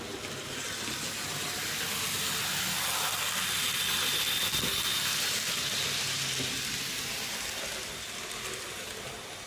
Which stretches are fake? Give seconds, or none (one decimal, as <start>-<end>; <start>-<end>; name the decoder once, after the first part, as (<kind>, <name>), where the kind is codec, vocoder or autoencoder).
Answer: none